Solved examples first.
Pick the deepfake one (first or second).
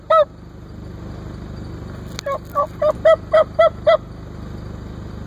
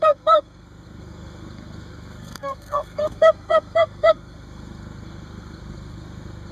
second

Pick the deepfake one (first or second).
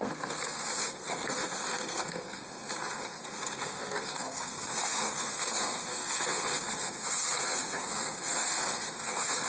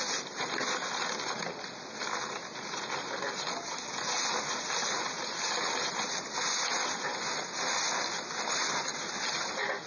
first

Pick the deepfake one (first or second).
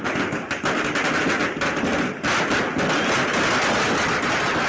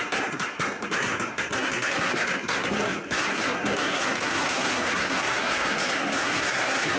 second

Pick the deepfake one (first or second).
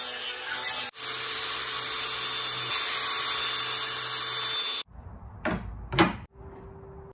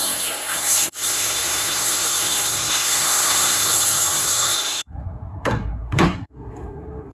second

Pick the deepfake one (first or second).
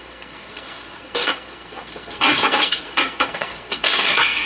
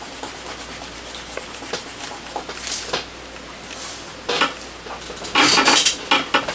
first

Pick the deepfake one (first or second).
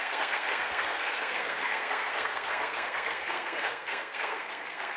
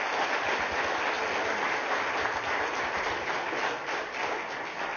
first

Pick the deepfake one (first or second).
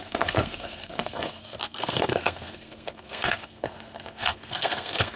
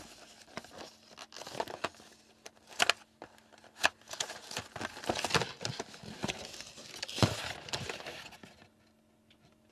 first